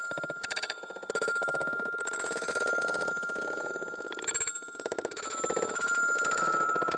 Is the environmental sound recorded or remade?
remade